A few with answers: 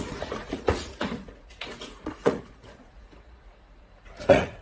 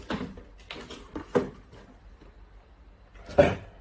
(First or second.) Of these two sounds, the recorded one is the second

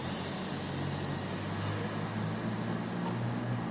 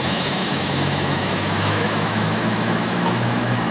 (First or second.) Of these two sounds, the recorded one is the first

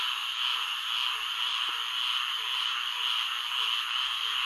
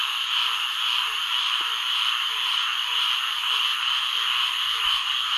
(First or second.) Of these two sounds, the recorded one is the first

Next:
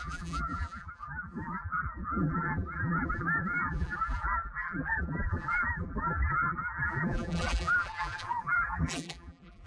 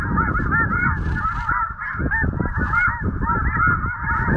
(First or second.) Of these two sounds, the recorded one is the second